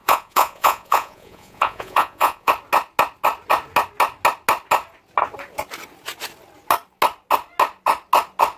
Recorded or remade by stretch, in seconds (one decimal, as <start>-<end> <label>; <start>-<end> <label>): 0.0-2.5 remade; 2.5-8.6 recorded